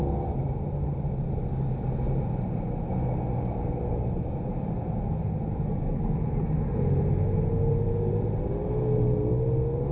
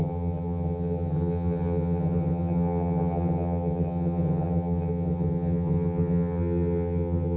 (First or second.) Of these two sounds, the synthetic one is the second